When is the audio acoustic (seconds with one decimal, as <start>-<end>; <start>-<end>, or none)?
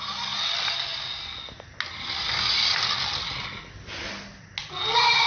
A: 0.0-5.3